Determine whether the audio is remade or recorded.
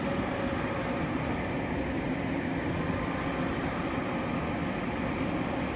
recorded